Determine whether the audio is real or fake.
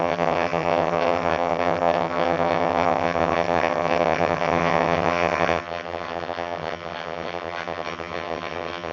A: fake